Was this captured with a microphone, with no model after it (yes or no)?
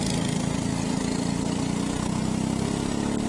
yes